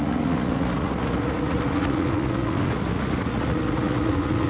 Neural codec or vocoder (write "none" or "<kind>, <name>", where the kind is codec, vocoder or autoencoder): vocoder, Vocos